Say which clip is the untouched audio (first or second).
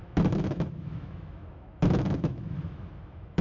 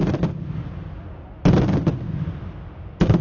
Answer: second